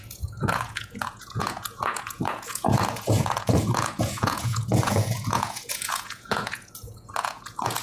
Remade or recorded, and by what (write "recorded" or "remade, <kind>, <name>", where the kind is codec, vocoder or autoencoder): remade, vocoder, Vocos